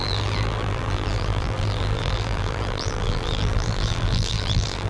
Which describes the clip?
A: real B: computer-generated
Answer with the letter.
B